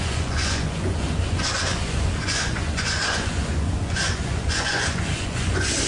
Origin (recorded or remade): remade